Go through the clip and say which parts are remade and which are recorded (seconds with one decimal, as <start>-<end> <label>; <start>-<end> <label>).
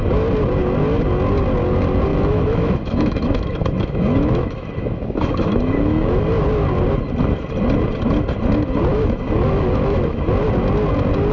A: 0.0-2.1 recorded; 2.1-6.2 remade; 6.2-8.9 recorded; 8.9-10.2 remade; 10.2-11.3 recorded